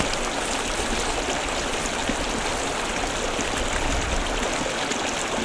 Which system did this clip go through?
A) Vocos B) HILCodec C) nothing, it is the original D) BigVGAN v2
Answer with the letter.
C